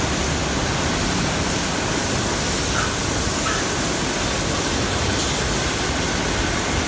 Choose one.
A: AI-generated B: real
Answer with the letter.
B